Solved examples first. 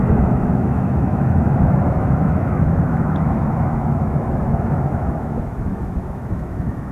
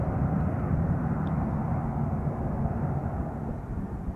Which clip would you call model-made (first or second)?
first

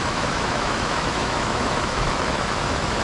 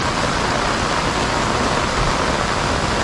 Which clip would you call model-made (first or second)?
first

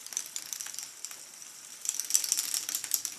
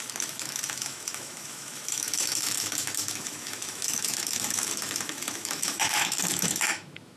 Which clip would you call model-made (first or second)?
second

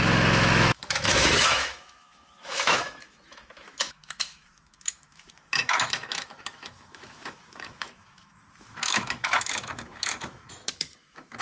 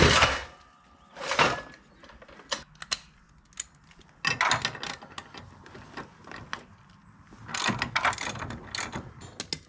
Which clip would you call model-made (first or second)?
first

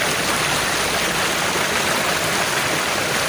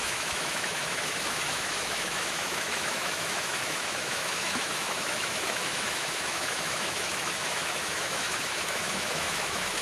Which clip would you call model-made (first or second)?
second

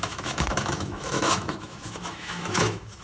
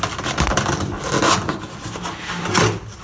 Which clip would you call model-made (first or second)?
first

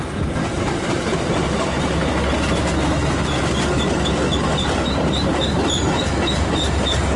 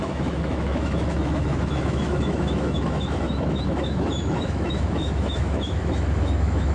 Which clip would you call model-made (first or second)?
second